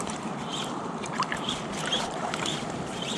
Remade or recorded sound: remade